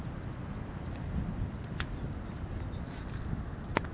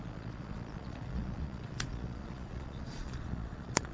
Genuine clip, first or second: first